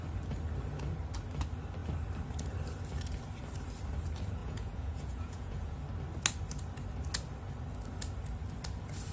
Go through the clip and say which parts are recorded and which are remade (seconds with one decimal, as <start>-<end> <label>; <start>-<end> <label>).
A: 0.0-4.4 recorded; 4.4-5.8 remade; 5.8-9.1 recorded